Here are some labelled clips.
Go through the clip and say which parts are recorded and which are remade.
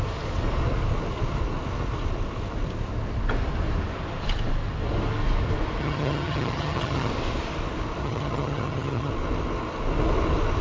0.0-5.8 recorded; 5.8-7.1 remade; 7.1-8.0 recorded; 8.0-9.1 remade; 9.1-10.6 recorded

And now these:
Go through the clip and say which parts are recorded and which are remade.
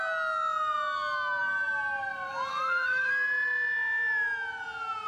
0.0-2.5 recorded; 2.5-3.1 remade; 3.1-5.1 recorded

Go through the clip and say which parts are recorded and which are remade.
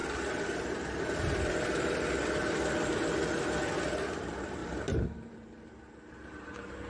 0.0-4.6 recorded; 4.6-5.7 remade; 5.7-6.9 recorded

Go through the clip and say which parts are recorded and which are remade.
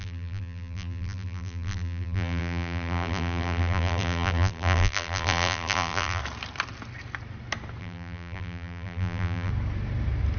0.0-6.2 remade; 6.2-7.8 recorded; 7.8-9.5 remade; 9.5-10.4 recorded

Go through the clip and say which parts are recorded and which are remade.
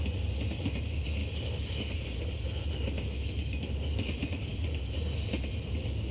0.0-6.1 recorded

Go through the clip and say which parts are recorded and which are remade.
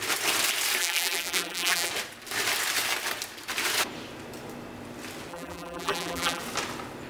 0.0-0.8 recorded; 0.8-1.9 remade; 1.9-5.3 recorded; 5.3-6.4 remade; 6.4-7.1 recorded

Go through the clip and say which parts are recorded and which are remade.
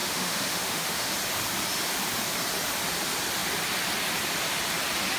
0.0-1.1 remade; 1.1-5.2 recorded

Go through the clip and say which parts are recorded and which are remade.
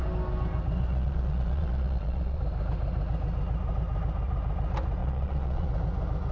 0.0-0.9 recorded; 0.9-2.4 remade; 2.4-5.0 recorded; 5.0-5.7 remade; 5.7-6.3 recorded